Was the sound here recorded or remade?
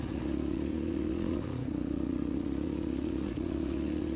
remade